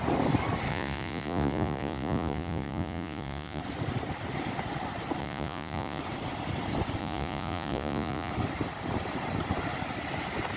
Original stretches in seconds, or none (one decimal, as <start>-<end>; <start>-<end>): 0.0-0.7; 3.6-5.2; 6.0-7.0; 8.3-10.6